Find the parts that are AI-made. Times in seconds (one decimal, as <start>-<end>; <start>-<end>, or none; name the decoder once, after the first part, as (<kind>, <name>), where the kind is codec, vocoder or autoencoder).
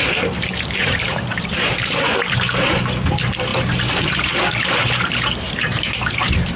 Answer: 0.8-1.9 (vocoder, BigVGAN v2); 3.5-6.6